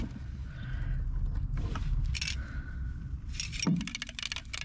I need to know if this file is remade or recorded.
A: recorded